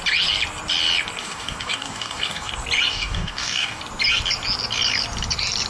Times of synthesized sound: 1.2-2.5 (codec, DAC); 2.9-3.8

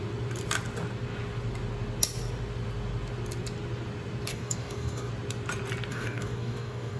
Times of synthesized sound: 4.3-5.1 (codec, DAC); 5.9-7.0

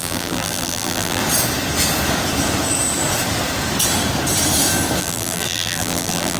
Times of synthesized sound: 0.0-1.2 (vocoder, BigVGAN v2); 5.0-6.4

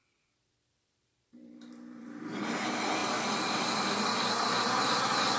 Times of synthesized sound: 0.0-2.4 (vocoder, BigVGAN v2); 3.0-3.9

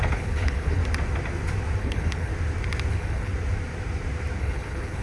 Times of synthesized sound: 0.0-0.8 (codec, HILCodec); 1.8-2.3; 2.9-3.3; 4.4-5.0

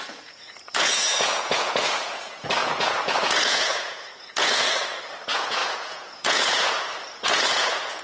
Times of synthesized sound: 0.0-8.0 (vocoder, Vocos)